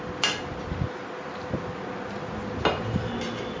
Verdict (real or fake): real